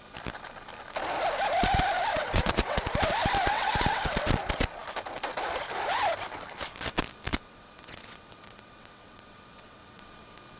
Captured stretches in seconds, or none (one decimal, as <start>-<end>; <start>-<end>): 0.0-2.1; 2.8-3.5; 4.1-7.3; 10.0-10.6